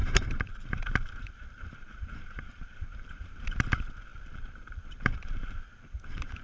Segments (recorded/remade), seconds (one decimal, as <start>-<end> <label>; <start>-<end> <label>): 0.0-6.4 remade